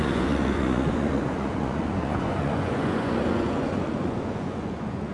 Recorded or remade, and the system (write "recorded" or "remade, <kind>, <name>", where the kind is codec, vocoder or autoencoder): remade, vocoder, Vocos